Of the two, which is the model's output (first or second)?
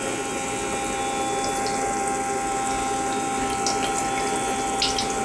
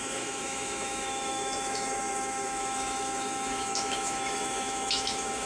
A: second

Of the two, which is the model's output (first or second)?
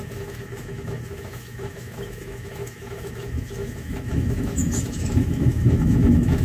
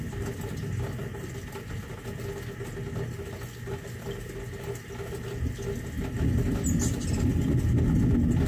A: first